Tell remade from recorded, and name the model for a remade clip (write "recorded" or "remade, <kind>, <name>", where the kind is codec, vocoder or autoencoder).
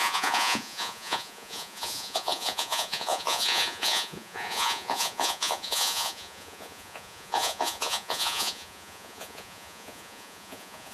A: remade, vocoder, Vocos